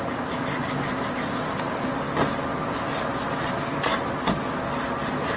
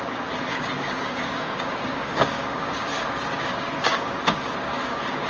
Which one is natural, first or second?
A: first